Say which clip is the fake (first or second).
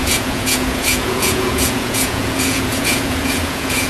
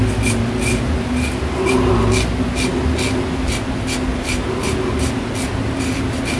first